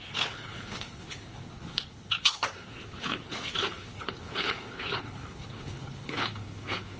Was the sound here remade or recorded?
remade